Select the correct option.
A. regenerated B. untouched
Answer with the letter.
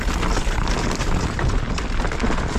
B